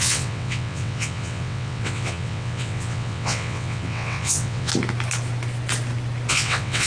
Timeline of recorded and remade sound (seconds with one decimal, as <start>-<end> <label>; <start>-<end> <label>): 0.0-4.7 remade; 4.7-6.3 recorded; 6.3-6.9 remade